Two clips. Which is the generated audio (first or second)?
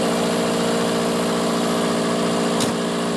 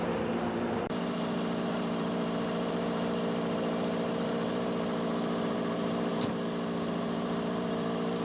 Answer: second